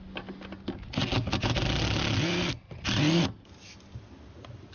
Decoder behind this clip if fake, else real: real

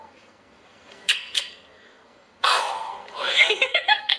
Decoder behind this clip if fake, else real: fake, codec, SNAC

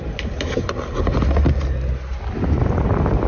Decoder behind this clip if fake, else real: real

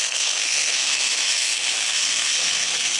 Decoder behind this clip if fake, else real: fake, codec, SNAC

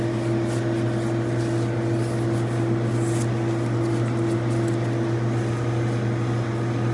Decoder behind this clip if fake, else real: real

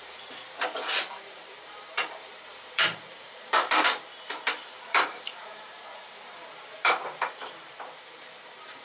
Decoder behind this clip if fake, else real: fake, vocoder, BigVGAN v2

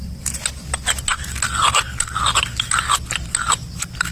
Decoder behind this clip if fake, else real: real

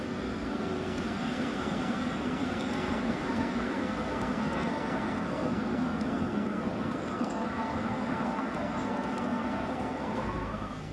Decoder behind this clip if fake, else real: fake, codec, SNAC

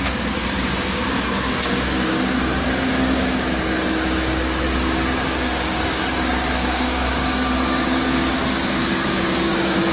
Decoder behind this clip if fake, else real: fake, codec, DAC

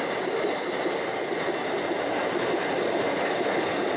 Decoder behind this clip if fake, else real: real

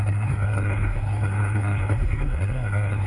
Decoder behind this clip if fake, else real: fake, codec, SNAC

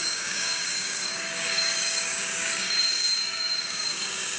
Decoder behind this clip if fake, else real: fake, codec, DAC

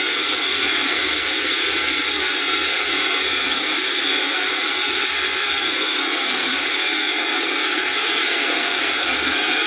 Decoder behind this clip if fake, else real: fake, codec, SNAC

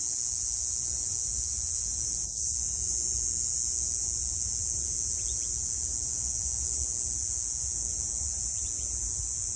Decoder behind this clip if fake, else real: real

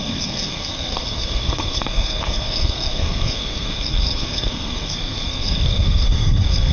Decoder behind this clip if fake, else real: fake, codec, SNAC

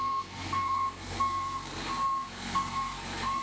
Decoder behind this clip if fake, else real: fake, codec, SNAC